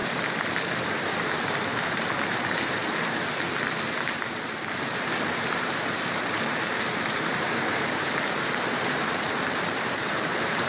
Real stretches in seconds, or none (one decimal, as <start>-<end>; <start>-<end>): 0.0-0.7; 2.8-4.3